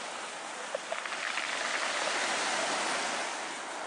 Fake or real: real